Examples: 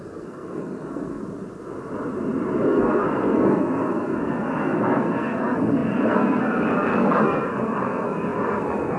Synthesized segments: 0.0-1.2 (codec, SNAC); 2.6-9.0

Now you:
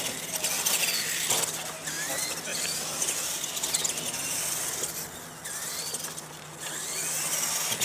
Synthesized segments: 2.5-3.5 (vocoder, BigVGAN v2)

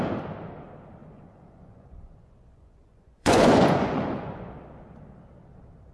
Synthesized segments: 1.0-4.5 (vocoder, Vocos)

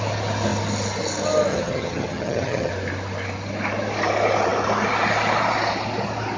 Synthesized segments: 1.5-2.7 (vocoder, HiFi-GAN)

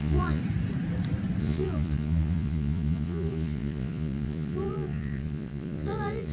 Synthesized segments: 0.0-0.4 (vocoder, Vocos); 1.4-6.3